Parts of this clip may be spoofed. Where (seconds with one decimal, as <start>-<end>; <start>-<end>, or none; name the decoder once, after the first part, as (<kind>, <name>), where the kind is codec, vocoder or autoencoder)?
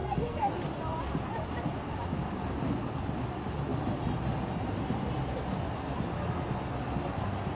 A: 0.0-0.5 (codec, SNAC)